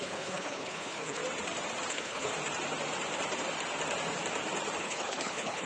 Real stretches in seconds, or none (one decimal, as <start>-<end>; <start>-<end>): 1.2-1.9; 2.3-4.8